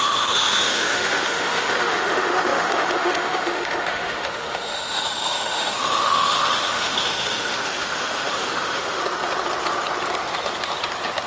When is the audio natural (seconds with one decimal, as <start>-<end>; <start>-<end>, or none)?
9.0-11.3